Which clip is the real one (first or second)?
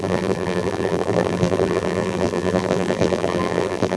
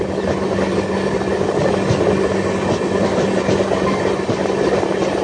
second